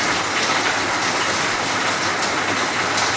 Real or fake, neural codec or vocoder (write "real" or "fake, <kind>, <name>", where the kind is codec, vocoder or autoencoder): real